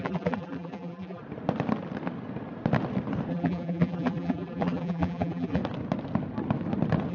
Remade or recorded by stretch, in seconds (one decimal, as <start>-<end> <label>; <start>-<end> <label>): 0.0-1.2 remade; 1.2-3.3 recorded; 3.3-5.6 remade; 5.6-7.1 recorded